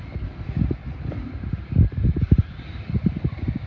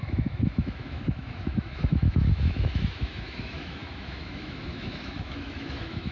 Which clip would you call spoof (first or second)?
second